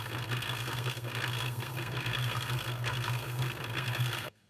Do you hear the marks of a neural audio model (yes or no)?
yes